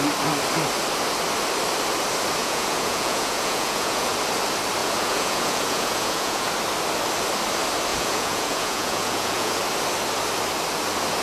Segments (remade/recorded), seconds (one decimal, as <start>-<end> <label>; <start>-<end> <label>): 0.0-2.4 recorded; 2.4-4.1 remade; 4.1-4.8 recorded; 4.8-6.5 remade; 6.5-7.9 recorded; 7.9-9.6 remade; 9.6-11.2 recorded